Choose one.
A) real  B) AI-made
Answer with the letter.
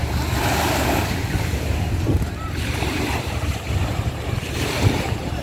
B